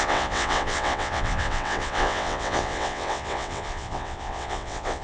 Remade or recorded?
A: remade